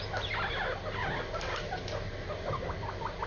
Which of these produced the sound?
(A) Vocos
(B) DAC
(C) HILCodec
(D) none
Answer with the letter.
D